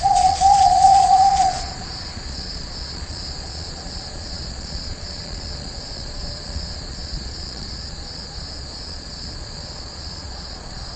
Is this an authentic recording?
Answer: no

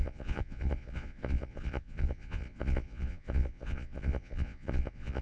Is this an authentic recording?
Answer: no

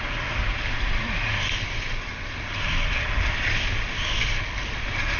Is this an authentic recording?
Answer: yes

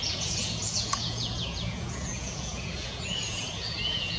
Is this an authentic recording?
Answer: no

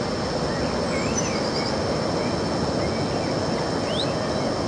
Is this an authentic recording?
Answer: yes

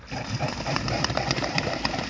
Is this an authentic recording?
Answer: yes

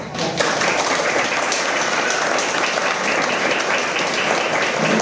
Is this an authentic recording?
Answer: yes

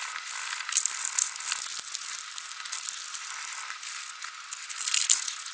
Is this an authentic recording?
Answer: yes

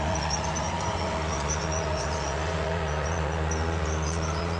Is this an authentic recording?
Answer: no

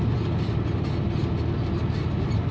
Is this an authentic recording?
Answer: yes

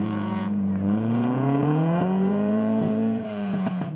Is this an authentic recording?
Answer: no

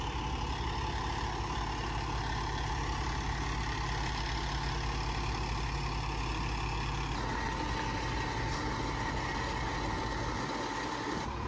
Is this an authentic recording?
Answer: yes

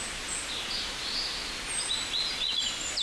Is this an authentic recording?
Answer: yes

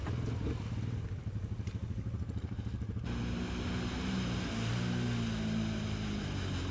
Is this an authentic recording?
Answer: yes